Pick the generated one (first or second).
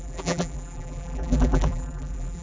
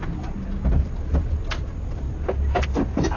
first